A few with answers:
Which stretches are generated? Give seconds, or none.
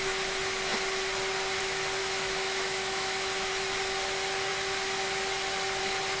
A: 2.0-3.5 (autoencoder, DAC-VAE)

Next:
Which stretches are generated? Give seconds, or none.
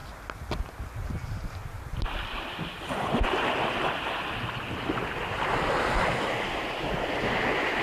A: none